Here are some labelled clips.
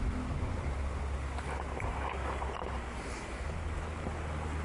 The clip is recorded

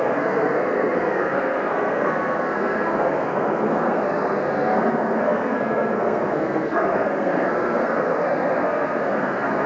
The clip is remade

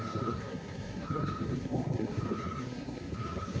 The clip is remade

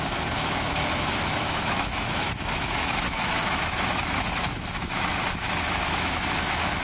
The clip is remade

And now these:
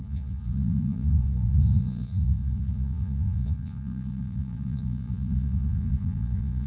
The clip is remade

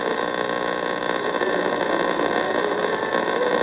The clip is recorded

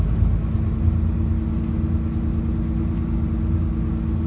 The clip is recorded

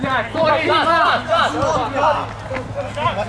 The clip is recorded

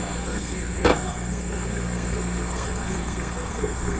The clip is remade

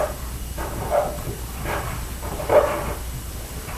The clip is remade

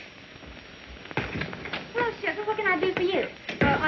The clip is recorded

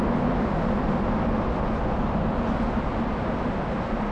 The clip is recorded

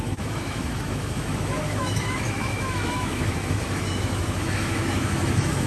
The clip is remade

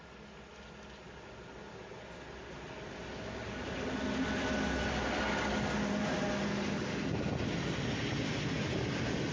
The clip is recorded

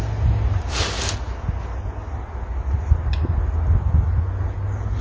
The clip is recorded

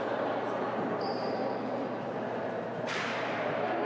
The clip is remade